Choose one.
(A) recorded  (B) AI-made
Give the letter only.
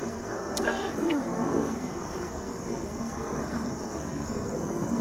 B